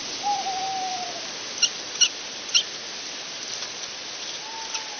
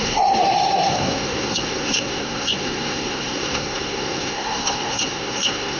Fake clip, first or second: second